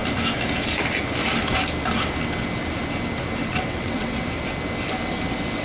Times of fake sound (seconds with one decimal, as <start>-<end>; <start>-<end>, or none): 3.4-4.2